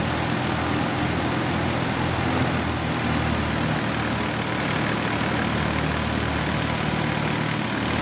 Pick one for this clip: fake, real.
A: real